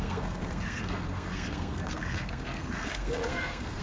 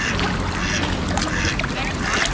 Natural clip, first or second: second